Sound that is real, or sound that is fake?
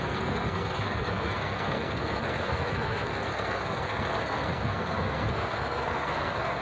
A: fake